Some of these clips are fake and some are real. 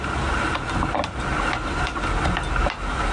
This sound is real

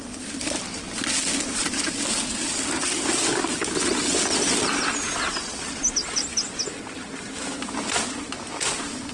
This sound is real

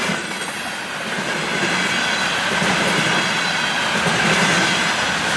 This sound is real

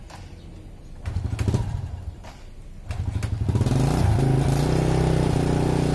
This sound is real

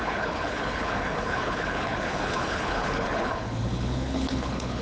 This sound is fake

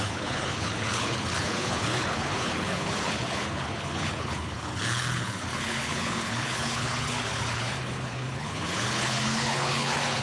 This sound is fake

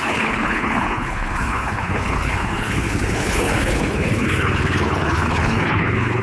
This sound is fake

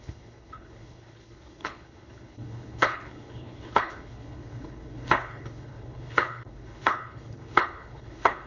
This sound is fake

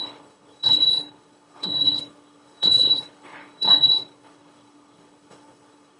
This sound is fake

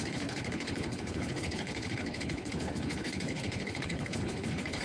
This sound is fake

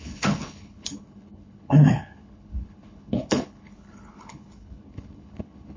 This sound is fake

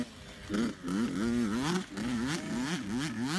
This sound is real